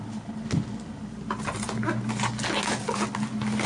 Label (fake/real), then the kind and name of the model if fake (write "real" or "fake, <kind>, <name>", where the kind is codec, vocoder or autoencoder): real